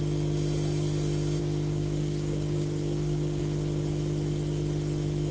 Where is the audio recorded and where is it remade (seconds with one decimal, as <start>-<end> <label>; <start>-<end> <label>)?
0.0-1.4 recorded; 1.4-3.4 remade; 3.4-5.3 recorded